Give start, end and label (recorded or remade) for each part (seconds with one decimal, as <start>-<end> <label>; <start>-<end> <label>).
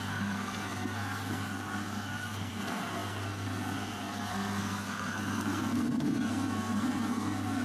0.0-7.6 remade